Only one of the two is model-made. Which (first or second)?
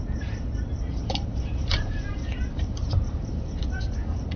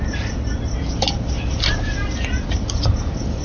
first